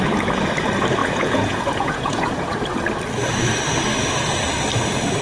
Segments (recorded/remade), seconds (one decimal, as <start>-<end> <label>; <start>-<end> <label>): 0.0-1.0 recorded; 1.0-2.5 remade; 2.5-5.2 recorded